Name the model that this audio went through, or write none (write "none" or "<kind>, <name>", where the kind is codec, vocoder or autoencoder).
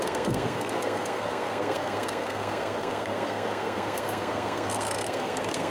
codec, SNAC